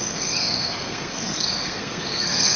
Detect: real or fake fake